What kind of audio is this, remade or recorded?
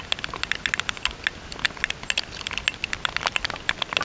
recorded